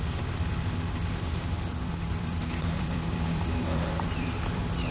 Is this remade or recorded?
remade